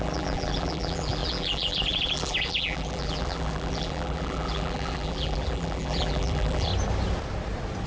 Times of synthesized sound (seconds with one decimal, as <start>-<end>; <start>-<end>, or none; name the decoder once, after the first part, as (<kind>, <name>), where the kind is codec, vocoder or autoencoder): 0.0-6.7 (vocoder, BigVGAN v2)